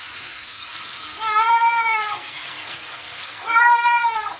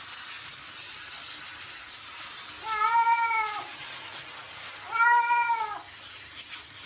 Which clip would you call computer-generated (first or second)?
first